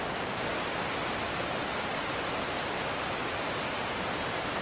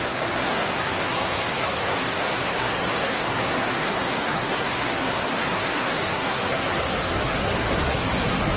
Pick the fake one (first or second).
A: second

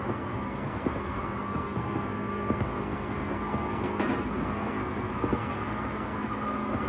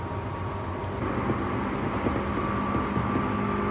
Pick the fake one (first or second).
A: first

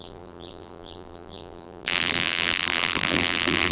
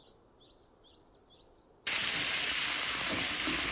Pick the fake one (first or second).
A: first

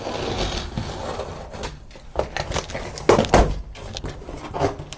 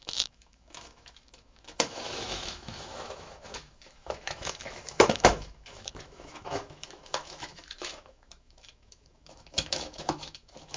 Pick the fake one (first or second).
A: second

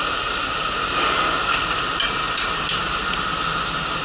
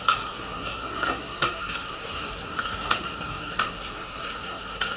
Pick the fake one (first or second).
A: second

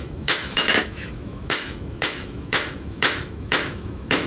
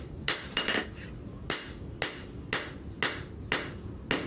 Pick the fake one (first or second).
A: first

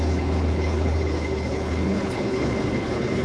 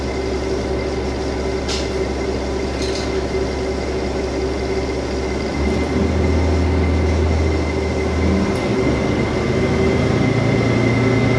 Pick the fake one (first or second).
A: first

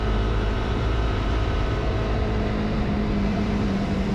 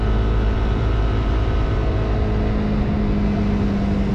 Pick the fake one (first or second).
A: first